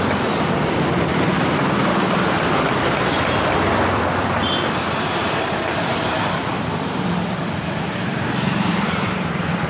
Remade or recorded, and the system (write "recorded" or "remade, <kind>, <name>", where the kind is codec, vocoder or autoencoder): remade, vocoder, BigVGAN v2